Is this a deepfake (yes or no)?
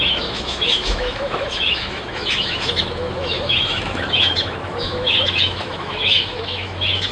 yes